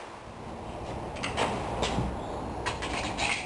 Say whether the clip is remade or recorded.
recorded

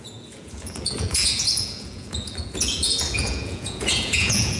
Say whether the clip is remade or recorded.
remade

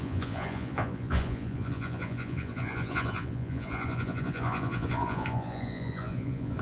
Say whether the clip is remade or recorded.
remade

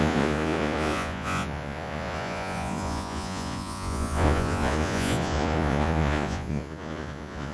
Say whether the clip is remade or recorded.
remade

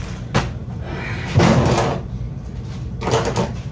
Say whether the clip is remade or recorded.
recorded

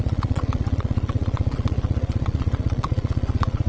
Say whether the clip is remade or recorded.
remade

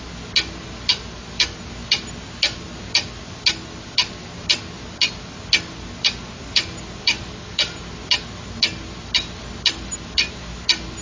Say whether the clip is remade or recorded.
recorded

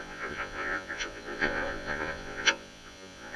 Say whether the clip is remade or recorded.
remade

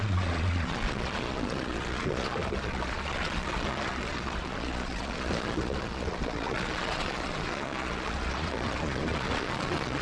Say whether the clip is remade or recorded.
remade